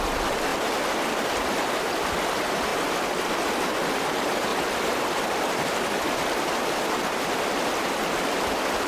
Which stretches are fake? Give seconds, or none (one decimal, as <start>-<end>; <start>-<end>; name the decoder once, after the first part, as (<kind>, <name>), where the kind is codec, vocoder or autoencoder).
0.0-2.7 (vocoder, BigVGAN v2); 4.0-4.5; 5.4-8.9